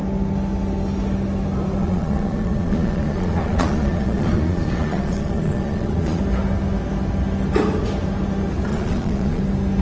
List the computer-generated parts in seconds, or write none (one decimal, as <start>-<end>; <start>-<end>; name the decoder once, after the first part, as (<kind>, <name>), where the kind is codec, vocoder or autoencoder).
1.8-6.2 (vocoder, Vocos); 8.7-9.4